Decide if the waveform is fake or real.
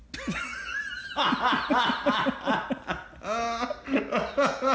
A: real